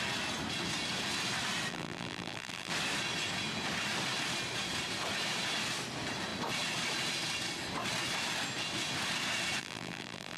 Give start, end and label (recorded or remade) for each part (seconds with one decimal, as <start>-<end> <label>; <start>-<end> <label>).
0.0-1.7 recorded; 1.7-2.7 remade; 2.7-9.6 recorded; 9.6-10.4 remade